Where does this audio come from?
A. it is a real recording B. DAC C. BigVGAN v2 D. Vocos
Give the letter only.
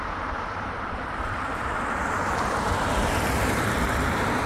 C